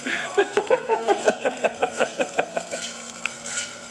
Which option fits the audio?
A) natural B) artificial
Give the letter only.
B